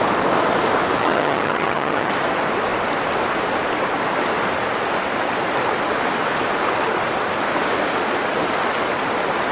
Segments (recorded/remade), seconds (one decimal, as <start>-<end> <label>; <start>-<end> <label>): 0.0-1.0 recorded; 1.0-2.1 remade; 2.1-9.5 recorded